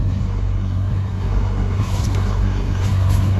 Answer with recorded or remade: remade